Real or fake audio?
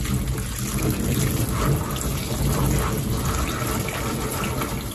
real